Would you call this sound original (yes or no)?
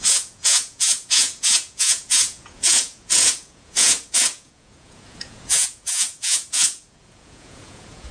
no